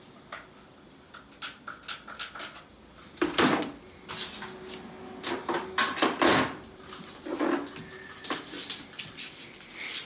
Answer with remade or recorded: recorded